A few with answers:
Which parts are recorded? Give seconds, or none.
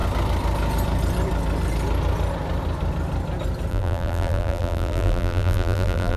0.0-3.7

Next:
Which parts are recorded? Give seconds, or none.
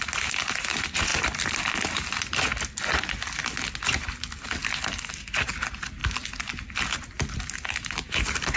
0.0-8.6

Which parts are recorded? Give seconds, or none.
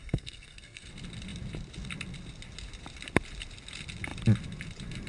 0.9-5.1